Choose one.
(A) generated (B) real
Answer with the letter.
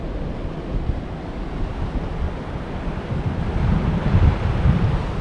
B